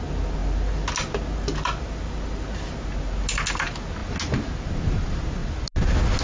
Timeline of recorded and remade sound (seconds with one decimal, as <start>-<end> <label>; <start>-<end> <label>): 0.0-6.2 recorded